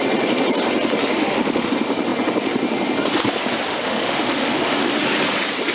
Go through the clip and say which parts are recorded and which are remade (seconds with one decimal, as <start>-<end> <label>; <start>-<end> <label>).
0.0-1.0 recorded; 1.0-1.7 remade; 1.7-3.7 recorded; 3.7-4.9 remade; 4.9-5.7 recorded

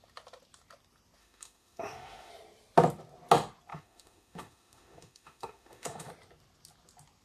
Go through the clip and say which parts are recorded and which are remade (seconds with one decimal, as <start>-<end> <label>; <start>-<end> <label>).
0.0-1.2 recorded; 1.2-2.3 remade; 2.3-3.7 recorded; 3.7-6.1 remade; 6.1-7.2 recorded